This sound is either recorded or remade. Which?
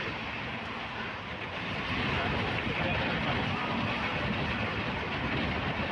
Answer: recorded